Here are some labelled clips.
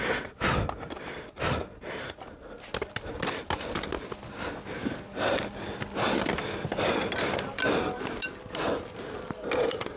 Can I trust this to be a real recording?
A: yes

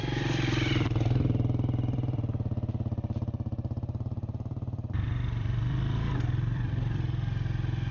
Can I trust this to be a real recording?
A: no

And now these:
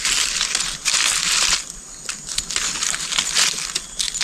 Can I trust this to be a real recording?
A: yes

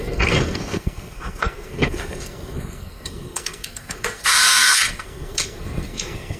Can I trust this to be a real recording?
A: no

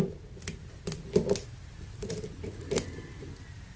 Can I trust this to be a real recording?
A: yes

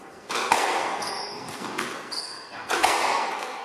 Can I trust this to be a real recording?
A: no